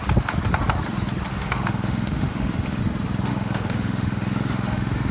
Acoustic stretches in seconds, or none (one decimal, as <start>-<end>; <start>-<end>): 0.0-1.3; 2.8-3.3